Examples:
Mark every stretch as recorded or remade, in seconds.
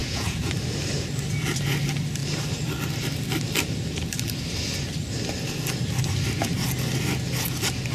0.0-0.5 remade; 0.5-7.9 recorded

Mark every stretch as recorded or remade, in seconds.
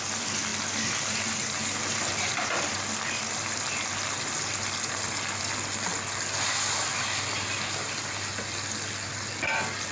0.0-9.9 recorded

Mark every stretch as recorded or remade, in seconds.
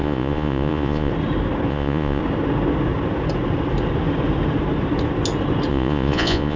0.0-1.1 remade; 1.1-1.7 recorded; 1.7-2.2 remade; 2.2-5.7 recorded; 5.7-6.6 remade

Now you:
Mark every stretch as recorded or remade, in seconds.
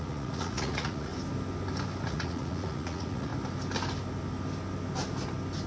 0.0-1.1 remade; 1.1-2.0 recorded; 2.0-3.3 remade; 3.3-5.7 recorded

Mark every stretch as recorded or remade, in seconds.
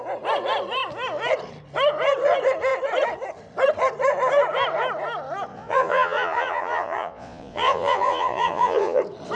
0.0-5.5 recorded; 5.5-9.0 remade; 9.0-9.4 recorded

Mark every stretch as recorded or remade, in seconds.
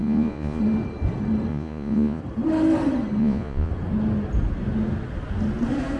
0.0-0.6 remade; 0.6-1.5 recorded; 1.5-2.2 remade; 2.2-3.2 recorded; 3.2-3.7 remade; 3.7-6.0 recorded